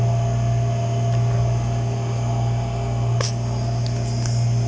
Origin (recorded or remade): recorded